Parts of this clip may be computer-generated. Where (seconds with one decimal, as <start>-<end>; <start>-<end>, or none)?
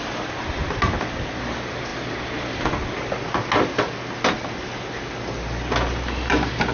none